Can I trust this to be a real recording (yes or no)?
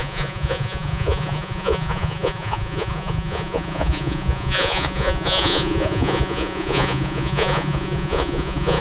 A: no